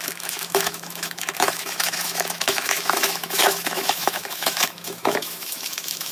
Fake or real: fake